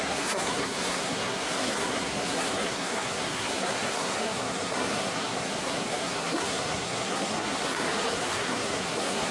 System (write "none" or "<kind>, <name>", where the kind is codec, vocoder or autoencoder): codec, SNAC